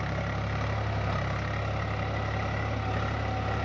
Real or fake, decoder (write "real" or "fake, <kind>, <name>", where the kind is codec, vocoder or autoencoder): real